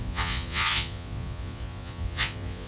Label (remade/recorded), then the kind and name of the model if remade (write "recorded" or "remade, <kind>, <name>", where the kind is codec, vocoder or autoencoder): remade, vocoder, Vocos